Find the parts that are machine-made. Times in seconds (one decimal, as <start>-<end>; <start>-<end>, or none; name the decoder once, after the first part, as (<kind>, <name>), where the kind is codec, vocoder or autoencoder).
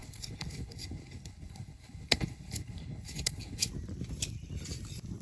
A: 0.0-3.7 (codec, HILCodec)